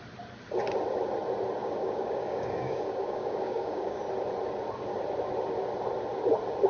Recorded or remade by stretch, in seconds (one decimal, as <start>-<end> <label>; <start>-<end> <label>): 0.0-1.6 recorded; 1.6-4.0 remade; 4.0-6.7 recorded